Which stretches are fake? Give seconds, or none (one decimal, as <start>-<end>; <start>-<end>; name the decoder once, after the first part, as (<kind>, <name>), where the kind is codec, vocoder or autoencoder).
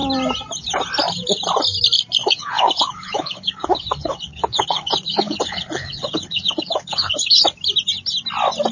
2.2-7.4 (codec, HILCodec)